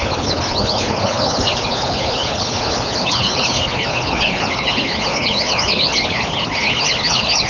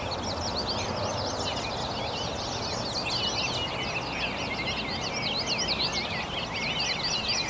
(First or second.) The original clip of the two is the second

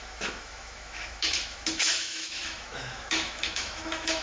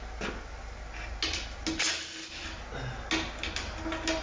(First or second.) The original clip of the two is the second